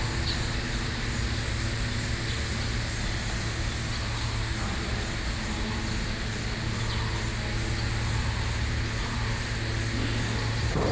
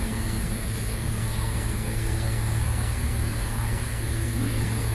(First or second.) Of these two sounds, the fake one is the second